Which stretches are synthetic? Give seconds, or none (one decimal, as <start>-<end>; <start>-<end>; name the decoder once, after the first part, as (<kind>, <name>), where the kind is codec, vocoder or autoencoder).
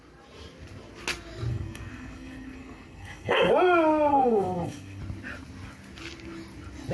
1.5-3.5 (codec, SNAC); 4.1-5.0